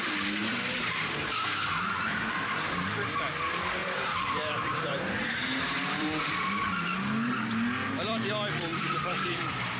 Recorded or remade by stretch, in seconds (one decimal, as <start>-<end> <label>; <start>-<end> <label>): 0.0-0.4 recorded; 0.4-3.1 remade; 3.1-3.8 recorded; 3.8-6.6 remade; 6.6-8.7 recorded; 8.7-9.8 remade